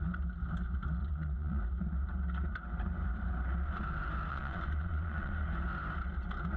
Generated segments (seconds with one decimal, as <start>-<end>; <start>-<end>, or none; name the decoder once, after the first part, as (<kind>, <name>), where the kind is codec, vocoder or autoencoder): 1.0-1.6 (vocoder, WaveNeXt); 4.3-5.3